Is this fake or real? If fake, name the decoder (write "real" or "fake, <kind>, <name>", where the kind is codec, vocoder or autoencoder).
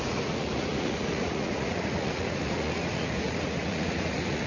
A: fake, vocoder, Vocos